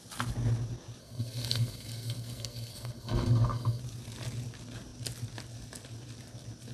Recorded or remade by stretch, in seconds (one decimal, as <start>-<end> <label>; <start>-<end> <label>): 0.0-1.0 recorded; 1.0-3.8 remade; 3.8-6.7 recorded